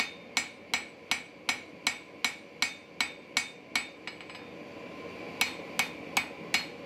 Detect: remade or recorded recorded